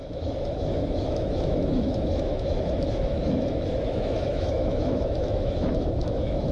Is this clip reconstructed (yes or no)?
yes